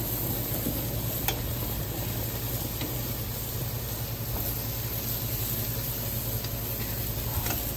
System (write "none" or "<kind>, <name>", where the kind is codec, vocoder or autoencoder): none